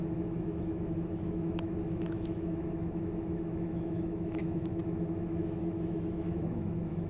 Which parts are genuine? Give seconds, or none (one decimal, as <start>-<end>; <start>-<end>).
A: none